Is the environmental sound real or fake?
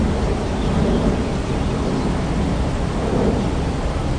real